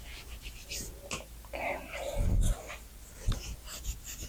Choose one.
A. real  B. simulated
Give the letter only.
A